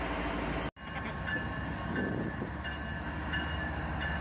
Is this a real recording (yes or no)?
yes